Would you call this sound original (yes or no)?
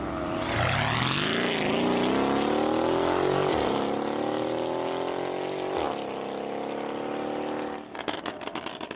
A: yes